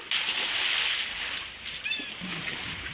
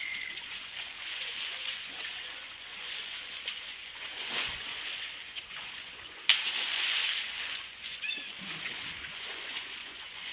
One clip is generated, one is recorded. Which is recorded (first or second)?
first